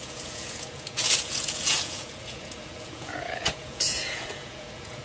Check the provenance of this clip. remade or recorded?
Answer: remade